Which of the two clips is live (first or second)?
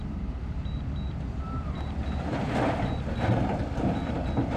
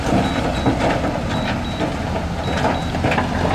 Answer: second